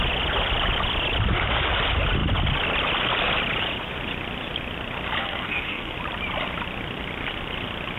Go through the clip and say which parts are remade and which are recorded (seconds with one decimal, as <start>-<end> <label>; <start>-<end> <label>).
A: 0.0-5.2 recorded; 5.2-5.9 remade; 5.9-8.0 recorded